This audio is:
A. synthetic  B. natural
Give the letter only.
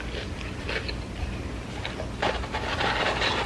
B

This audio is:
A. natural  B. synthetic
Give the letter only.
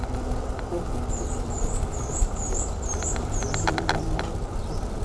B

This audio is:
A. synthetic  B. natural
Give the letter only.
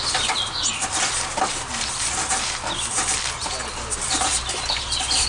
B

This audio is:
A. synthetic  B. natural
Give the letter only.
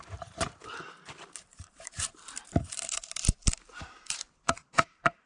A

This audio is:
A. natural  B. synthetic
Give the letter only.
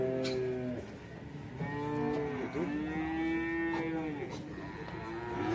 A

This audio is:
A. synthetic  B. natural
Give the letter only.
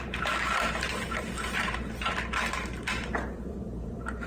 A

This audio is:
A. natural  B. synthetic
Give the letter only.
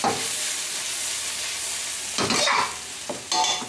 A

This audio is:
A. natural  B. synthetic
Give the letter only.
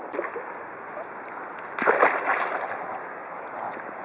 A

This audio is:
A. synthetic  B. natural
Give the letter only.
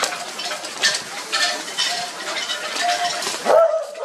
A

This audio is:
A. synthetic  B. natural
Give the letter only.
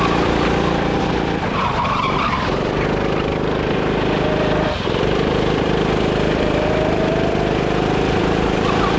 A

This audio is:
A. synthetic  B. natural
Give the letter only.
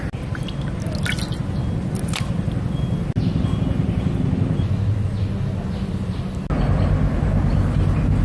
B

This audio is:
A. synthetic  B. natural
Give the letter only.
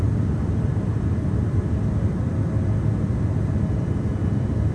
A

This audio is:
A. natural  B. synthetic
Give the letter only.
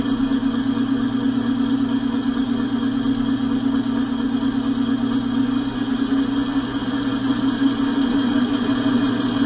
A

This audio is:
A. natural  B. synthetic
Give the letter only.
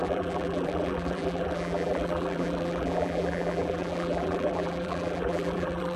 B